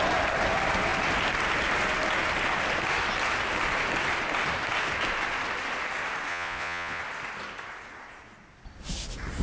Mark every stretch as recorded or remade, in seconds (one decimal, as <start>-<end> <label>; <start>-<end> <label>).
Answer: 0.0-6.3 recorded; 6.3-7.0 remade; 7.0-9.4 recorded